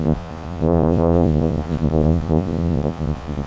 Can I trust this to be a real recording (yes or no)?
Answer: no